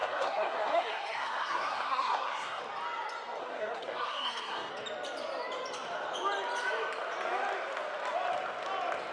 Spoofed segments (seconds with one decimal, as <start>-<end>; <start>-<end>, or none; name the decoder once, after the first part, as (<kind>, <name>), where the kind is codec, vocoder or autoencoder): 0.0-2.6 (codec, SNAC); 3.4-4.7